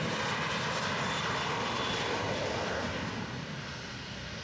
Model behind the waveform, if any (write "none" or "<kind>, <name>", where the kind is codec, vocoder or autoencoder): none